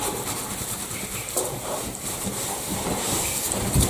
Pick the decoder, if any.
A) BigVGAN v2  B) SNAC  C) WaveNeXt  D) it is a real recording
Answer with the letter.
A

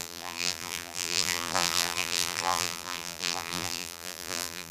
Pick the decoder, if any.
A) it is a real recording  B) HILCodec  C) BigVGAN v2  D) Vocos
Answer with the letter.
C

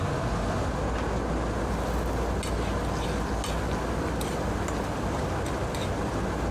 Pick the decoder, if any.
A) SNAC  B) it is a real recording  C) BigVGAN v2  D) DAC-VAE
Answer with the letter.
B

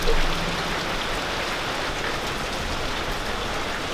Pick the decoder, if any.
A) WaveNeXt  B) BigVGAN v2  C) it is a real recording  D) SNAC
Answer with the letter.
C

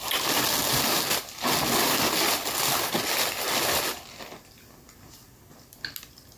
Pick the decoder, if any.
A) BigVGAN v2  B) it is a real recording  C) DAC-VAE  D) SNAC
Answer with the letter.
B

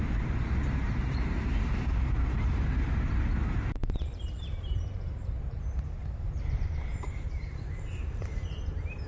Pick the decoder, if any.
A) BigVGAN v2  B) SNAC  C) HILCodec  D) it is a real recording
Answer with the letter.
A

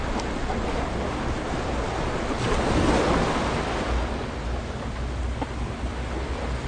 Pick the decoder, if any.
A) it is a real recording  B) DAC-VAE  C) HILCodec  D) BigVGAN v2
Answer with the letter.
A